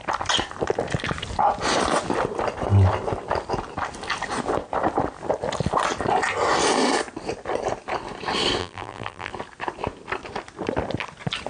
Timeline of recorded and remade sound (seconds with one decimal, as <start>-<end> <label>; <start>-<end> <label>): 0.0-8.6 recorded; 8.6-9.3 remade; 9.3-11.5 recorded